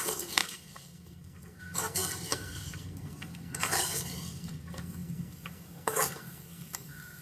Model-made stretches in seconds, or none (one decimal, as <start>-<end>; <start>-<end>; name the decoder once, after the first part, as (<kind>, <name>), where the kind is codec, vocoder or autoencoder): 0.0-7.2 (codec, SNAC)

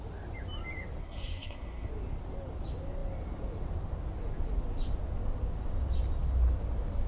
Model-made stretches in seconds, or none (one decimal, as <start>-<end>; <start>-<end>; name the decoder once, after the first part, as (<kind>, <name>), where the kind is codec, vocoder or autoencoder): 1.0-1.9 (codec, SNAC)

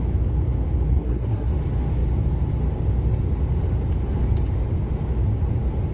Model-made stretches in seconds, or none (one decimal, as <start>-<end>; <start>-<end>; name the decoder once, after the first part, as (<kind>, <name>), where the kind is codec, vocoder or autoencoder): 0.9-1.5 (codec, SNAC)

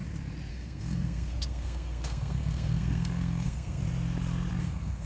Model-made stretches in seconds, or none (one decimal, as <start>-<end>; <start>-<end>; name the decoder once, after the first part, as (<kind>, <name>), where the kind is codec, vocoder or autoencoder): 0.5-3.8 (codec, SNAC); 4.6-5.1